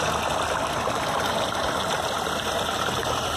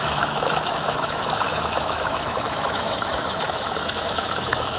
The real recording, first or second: first